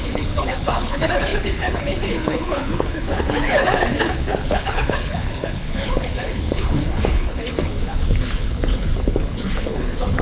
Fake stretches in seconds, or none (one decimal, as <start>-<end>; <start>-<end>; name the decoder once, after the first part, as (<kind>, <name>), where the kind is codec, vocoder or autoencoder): 0.0-10.2 (codec, HILCodec)